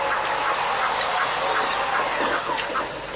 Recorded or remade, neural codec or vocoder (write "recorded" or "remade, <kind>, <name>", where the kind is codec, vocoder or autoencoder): recorded